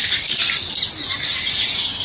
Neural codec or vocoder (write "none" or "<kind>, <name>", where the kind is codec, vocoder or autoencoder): none